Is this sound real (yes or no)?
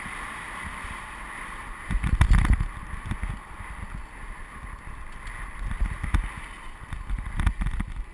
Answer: yes